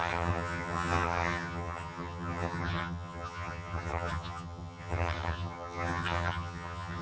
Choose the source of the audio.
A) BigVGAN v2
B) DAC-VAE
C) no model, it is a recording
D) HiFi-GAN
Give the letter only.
D